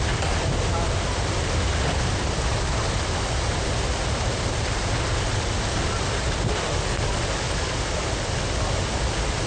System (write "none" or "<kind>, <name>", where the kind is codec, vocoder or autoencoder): none